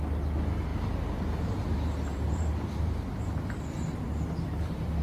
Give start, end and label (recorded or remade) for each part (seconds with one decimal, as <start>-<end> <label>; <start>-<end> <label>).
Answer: 0.0-2.1 recorded; 2.1-5.0 remade